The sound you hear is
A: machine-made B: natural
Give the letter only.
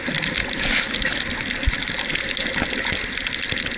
B